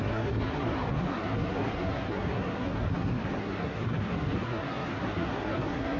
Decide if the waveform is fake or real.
fake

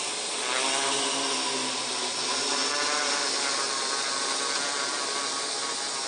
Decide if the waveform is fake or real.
real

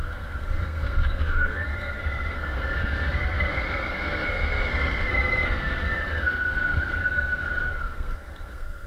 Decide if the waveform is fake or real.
fake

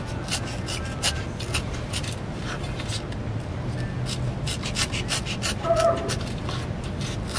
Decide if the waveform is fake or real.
real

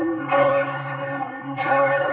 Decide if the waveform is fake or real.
fake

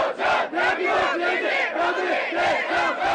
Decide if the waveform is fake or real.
real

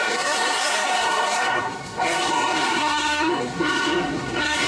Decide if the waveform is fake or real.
fake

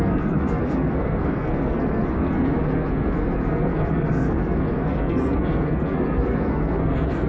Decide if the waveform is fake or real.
fake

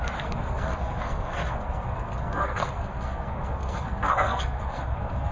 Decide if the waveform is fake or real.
fake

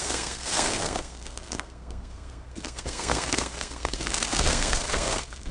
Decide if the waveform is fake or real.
fake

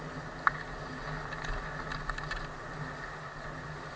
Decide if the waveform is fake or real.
real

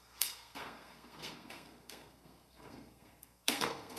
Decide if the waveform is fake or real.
fake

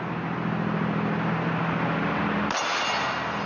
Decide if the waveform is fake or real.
real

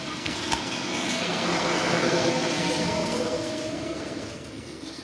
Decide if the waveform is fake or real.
fake